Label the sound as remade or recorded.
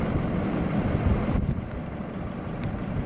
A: recorded